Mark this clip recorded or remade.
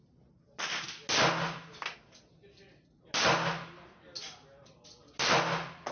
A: recorded